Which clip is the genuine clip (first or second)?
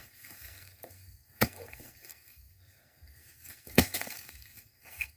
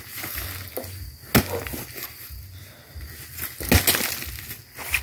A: second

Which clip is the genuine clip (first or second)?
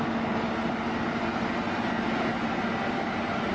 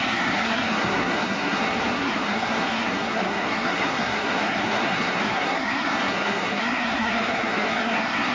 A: first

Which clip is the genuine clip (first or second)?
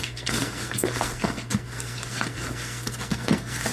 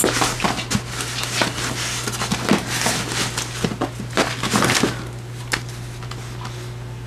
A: second